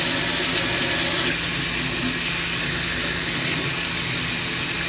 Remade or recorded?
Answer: recorded